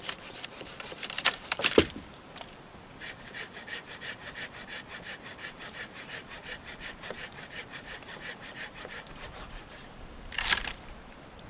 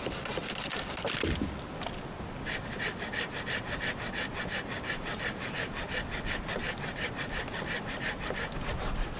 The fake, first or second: first